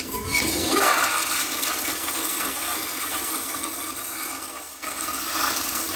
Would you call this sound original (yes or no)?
no